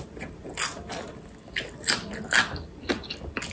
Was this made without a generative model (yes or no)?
yes